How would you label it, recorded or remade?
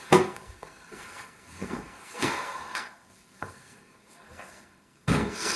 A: remade